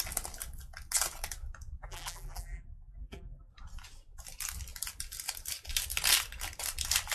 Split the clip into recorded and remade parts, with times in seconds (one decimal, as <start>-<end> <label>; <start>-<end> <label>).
0.0-1.8 recorded; 1.8-3.5 remade; 3.5-7.1 recorded